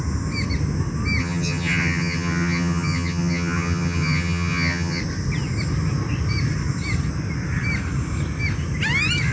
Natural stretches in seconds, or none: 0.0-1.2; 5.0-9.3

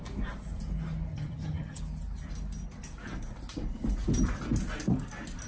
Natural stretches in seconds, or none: 0.0-1.1; 1.8-5.5

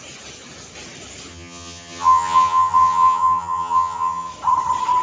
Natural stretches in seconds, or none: 0.0-1.3; 4.3-5.0

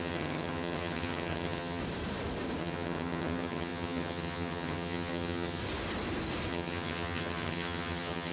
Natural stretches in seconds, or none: 1.8-2.6; 5.6-6.5

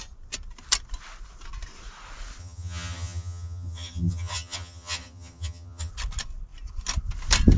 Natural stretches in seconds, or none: 0.0-2.4; 5.9-7.6